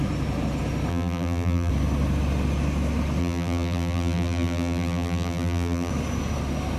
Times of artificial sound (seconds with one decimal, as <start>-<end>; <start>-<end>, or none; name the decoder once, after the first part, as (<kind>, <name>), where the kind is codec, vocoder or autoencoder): 0.9-1.7 (vocoder, BigVGAN v2); 3.2-5.9